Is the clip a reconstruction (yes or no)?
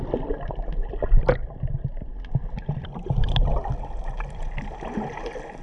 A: no